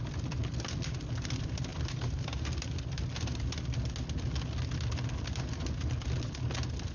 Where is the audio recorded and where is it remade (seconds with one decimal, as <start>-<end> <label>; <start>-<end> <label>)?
0.0-1.7 recorded; 1.7-3.0 remade; 3.0-6.9 recorded